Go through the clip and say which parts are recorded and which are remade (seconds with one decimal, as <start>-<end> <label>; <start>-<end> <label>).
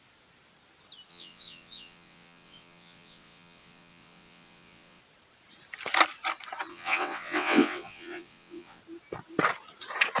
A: 0.0-1.1 recorded; 1.1-5.0 remade; 5.0-6.7 recorded; 6.7-8.8 remade; 8.8-10.2 recorded